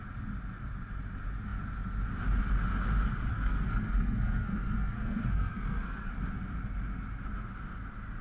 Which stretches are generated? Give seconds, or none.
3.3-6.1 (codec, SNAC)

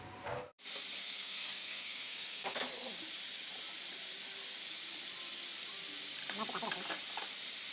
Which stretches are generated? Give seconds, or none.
1.0-2.6 (codec, SNAC)